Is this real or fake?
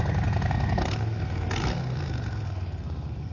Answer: fake